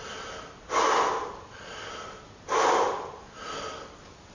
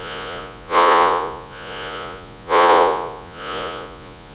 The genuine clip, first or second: first